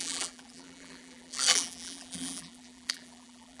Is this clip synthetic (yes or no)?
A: yes